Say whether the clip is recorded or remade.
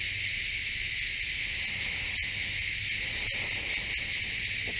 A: recorded